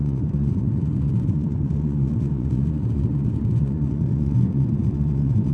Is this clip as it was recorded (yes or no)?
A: no